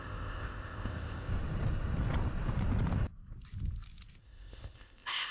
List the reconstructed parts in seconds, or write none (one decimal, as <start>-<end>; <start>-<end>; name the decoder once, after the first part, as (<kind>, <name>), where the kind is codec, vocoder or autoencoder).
0.0-1.3 (codec, ZipCodec); 4.2-5.3